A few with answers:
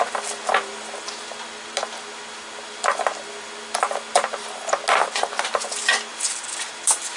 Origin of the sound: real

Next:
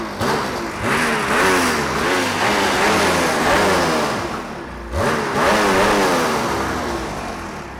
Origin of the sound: real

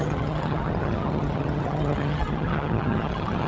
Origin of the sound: fake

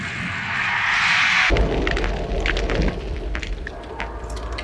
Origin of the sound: real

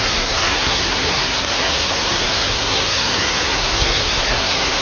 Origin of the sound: fake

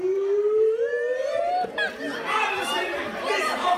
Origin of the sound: fake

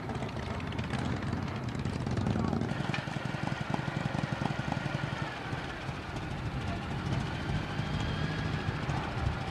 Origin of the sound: real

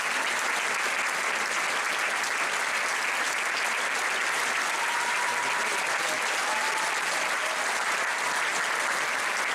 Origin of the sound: real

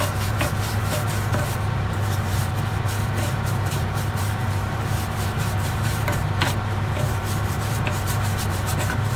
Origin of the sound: fake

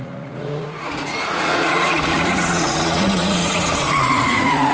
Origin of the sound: fake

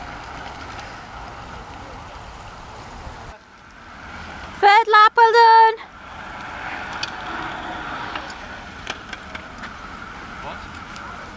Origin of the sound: real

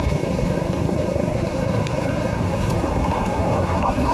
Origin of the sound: fake